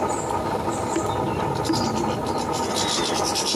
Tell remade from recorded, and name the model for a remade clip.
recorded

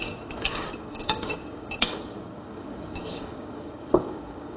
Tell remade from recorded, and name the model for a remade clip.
remade, codec, DAC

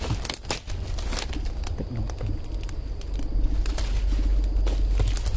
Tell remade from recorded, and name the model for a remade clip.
recorded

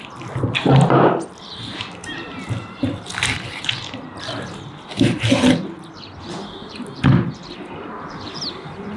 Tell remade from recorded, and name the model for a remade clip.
recorded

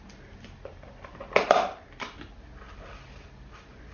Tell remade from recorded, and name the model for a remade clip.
recorded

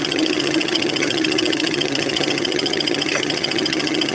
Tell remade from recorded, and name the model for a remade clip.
remade, vocoder, HiFi-GAN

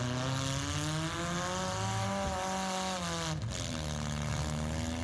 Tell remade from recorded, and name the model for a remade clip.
recorded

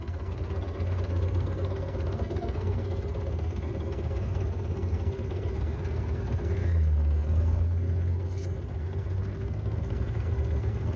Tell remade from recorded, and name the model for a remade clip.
remade, codec, SNAC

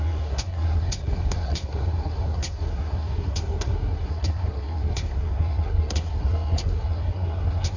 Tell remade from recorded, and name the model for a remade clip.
remade, codec, SNAC